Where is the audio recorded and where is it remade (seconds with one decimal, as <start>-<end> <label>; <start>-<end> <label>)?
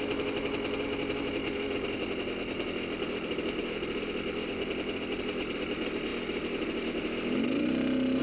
0.0-8.2 recorded